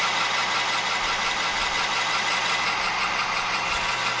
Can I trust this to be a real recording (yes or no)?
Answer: yes